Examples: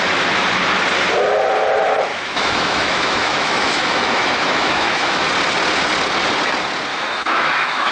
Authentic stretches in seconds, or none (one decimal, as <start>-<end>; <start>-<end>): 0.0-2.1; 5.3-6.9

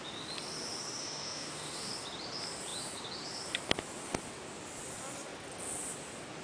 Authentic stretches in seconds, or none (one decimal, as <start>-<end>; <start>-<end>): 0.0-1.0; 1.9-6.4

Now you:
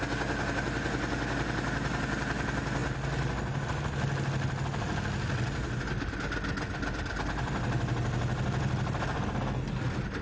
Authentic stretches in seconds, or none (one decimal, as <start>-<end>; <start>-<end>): 0.0-10.2